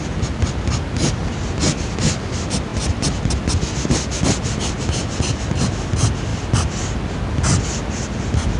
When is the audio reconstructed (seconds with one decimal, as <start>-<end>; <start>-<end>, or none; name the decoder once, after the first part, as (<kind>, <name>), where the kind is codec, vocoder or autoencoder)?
none